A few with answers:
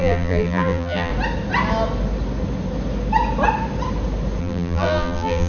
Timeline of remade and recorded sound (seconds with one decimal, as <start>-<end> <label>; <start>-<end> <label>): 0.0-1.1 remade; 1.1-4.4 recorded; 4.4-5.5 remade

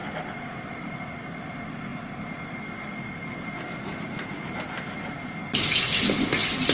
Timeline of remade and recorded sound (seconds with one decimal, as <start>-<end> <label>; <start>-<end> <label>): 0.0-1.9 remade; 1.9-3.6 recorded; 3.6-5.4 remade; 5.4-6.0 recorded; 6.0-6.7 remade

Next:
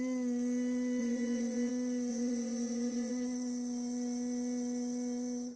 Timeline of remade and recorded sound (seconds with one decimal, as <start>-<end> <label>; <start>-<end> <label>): 0.0-1.0 recorded; 1.0-1.7 remade; 1.7-2.1 recorded; 2.1-3.1 remade; 3.1-5.6 recorded

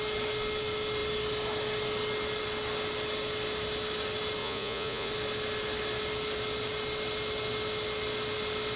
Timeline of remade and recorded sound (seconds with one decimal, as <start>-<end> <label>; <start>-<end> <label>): 0.0-4.4 recorded; 4.4-5.1 remade; 5.1-8.8 recorded

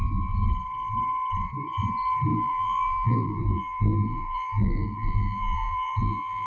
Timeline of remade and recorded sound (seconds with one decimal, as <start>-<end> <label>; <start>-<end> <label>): 0.0-2.3 recorded; 2.3-6.5 remade